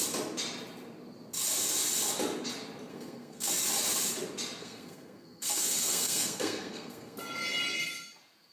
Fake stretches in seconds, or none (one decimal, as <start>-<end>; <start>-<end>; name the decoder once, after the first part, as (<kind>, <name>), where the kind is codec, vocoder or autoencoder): 2.9-3.5 (codec, SNAC); 4.6-7.2